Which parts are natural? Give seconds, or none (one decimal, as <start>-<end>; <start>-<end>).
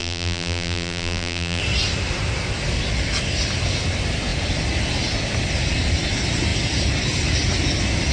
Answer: 1.6-8.1